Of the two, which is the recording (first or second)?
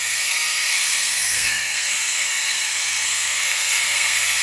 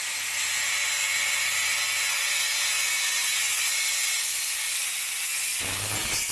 second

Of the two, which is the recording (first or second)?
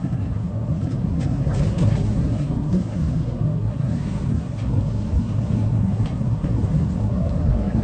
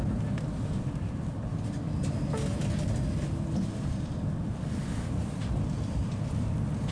second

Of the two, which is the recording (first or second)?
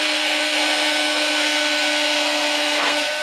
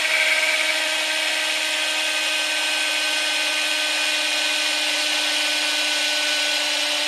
second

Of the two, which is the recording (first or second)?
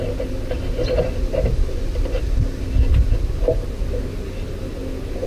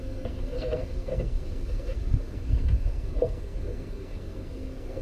first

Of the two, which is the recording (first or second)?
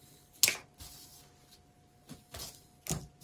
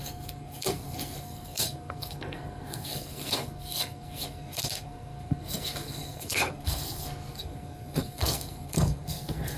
first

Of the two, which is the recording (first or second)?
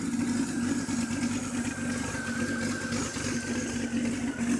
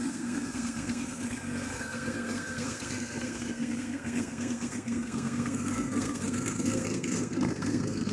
first